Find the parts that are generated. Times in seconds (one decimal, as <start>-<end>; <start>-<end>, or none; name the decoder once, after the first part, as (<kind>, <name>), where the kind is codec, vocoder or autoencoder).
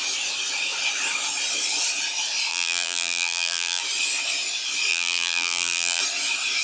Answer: 2.5-3.8 (vocoder, BigVGAN v2); 4.9-6.0